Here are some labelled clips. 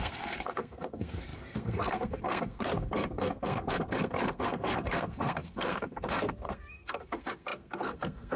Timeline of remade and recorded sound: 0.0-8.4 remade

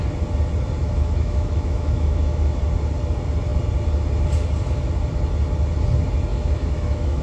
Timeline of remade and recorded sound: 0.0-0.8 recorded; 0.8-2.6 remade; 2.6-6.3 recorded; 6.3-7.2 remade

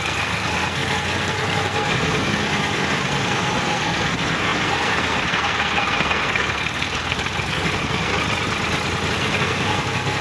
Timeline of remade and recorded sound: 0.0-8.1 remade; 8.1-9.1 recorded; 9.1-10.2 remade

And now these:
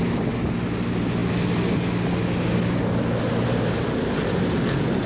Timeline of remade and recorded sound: 0.0-5.1 recorded

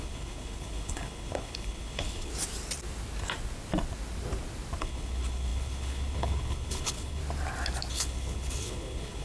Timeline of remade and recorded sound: 0.0-2.3 remade; 2.3-4.8 recorded; 4.8-7.2 remade; 7.2-7.9 recorded; 7.9-9.2 remade

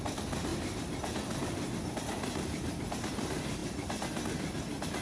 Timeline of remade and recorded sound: 0.0-5.0 recorded

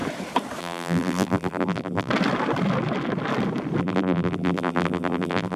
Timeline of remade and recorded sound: 0.0-0.6 recorded; 0.6-2.1 remade; 2.1-3.8 recorded; 3.8-5.6 remade

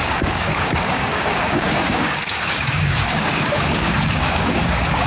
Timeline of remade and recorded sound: 0.0-5.1 remade